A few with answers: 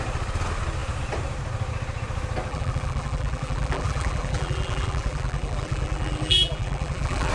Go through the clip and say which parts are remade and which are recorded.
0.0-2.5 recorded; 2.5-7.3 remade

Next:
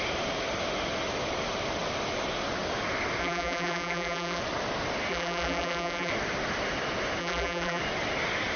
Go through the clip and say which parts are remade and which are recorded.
0.0-3.2 recorded; 3.2-4.4 remade; 4.4-5.1 recorded; 5.1-6.1 remade; 6.1-7.2 recorded; 7.2-7.8 remade; 7.8-8.6 recorded

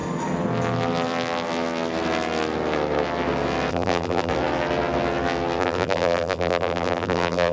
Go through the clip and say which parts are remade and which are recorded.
0.0-3.7 recorded; 3.7-4.3 remade; 4.3-5.6 recorded; 5.6-7.5 remade